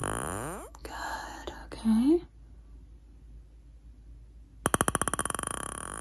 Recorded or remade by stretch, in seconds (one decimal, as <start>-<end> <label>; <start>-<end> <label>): 0.0-1.6 remade; 1.6-5.2 recorded; 5.2-6.0 remade